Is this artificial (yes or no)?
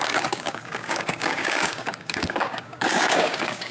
yes